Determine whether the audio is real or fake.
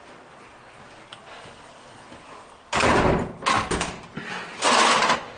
real